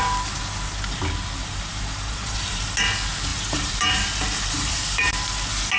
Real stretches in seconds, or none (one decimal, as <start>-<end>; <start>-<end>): 0.0-1.4; 2.7-3.3; 5.1-5.8